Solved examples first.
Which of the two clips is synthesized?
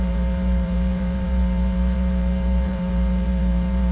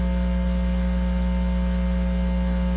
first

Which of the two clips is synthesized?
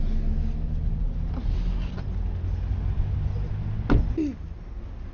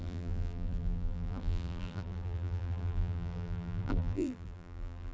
second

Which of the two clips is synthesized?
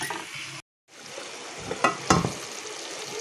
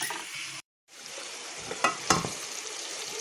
second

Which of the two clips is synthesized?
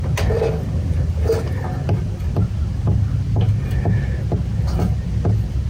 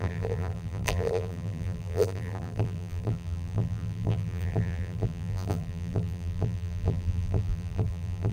second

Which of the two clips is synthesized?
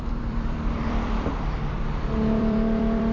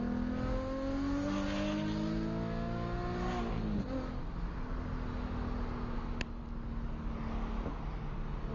first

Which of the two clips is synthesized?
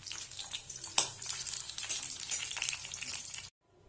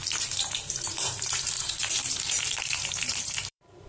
second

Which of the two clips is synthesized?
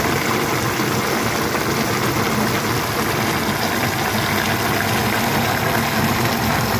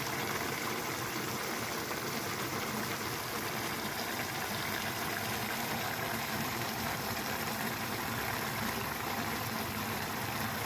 second